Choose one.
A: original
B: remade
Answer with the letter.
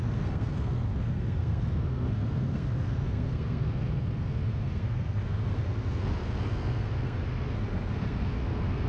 B